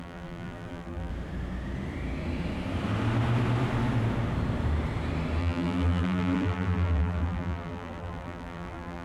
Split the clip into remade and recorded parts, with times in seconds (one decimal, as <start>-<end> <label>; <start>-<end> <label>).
0.0-1.1 remade; 1.1-5.4 recorded; 5.4-9.0 remade